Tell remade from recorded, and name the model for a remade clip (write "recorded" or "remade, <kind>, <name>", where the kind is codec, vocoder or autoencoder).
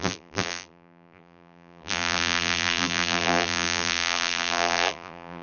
remade, vocoder, BigVGAN v2